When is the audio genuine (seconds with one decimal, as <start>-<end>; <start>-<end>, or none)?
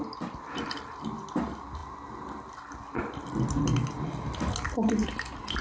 0.0-5.6